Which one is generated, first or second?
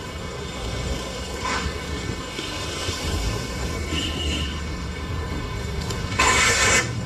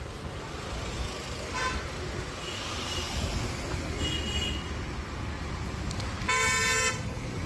first